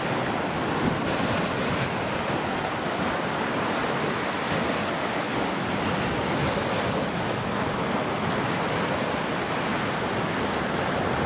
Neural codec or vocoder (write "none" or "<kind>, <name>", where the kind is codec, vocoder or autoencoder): none